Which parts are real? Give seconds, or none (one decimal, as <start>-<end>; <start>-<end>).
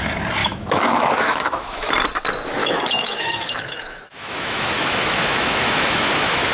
0.0-0.4; 1.9-2.6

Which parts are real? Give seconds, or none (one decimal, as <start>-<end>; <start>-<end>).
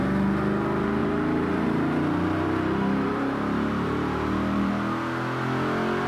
0.0-1.0; 4.7-6.1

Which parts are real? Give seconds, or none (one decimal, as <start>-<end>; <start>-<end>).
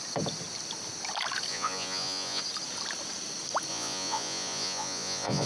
0.0-1.5; 2.4-3.7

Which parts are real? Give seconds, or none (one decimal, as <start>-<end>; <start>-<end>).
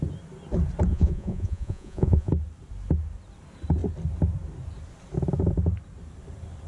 0.0-0.9; 2.3-6.7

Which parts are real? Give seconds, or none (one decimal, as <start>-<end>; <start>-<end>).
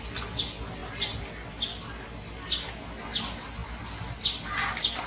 0.0-5.1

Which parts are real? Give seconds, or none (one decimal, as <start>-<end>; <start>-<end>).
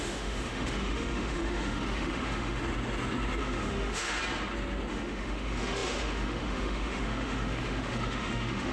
2.6-3.4; 4.2-4.9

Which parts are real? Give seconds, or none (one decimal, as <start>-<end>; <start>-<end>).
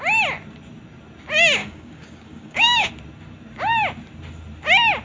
0.0-1.6; 2.9-5.0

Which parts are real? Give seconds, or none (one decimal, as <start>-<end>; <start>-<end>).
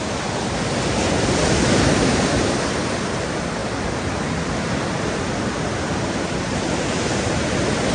0.0-7.9